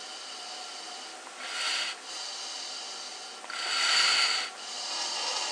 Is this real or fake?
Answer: real